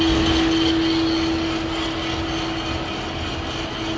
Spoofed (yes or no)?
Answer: no